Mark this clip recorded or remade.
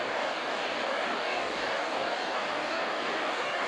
remade